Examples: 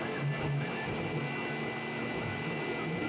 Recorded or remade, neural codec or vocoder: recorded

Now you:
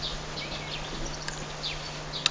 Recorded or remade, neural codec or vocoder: recorded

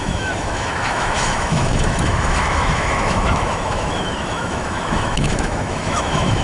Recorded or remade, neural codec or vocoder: remade, autoencoder, DAC-VAE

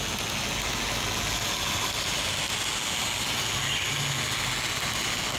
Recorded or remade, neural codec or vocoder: recorded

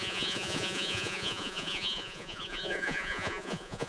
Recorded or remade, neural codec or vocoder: remade, vocoder, Vocos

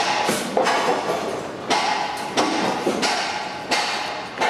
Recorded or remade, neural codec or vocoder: recorded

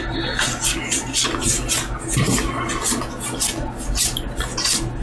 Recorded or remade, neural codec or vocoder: recorded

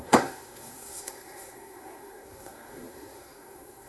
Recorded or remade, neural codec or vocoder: remade, codec, SNAC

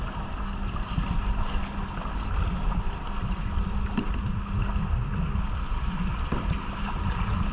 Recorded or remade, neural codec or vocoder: recorded